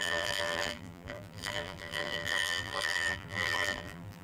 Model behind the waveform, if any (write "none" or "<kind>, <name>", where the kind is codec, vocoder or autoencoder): vocoder, BigVGAN v2